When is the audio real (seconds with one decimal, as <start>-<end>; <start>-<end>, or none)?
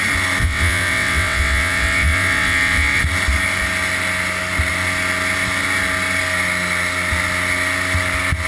0.0-0.4; 3.0-8.5